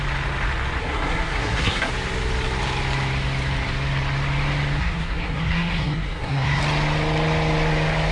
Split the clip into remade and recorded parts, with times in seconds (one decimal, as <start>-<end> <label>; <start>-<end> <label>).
0.0-0.8 recorded; 0.8-1.9 remade; 1.9-4.8 recorded; 4.8-6.6 remade; 6.6-8.1 recorded